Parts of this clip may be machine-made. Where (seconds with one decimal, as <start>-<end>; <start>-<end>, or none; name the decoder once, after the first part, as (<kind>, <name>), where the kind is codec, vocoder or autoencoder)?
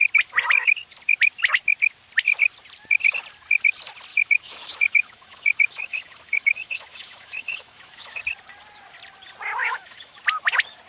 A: 4.1-8.2 (autoencoder, DAC-VAE); 9.6-10.2